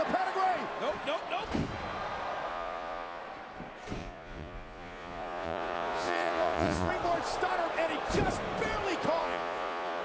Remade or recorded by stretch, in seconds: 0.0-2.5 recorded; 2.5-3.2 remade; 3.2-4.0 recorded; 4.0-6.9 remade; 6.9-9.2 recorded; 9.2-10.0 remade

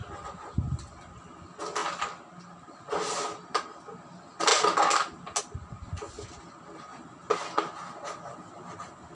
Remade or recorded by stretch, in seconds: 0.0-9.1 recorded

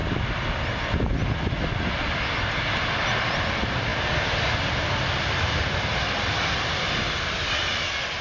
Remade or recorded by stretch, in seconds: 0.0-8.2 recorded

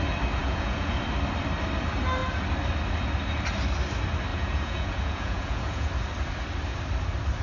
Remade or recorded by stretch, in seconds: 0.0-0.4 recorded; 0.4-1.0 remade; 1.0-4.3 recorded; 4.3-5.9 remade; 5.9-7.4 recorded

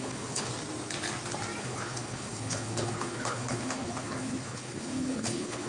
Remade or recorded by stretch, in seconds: 0.0-0.5 remade; 0.5-1.6 recorded; 1.6-5.7 remade

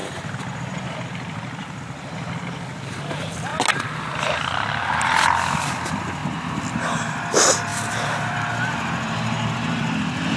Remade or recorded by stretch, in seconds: 0.0-3.5 remade; 3.5-4.4 recorded; 4.4-10.4 remade

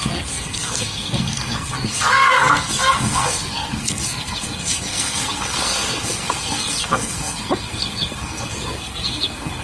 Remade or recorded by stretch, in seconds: 0.0-9.6 remade

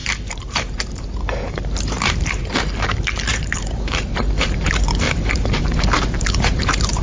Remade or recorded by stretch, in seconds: 0.0-2.4 remade; 2.4-3.3 recorded; 3.3-7.0 remade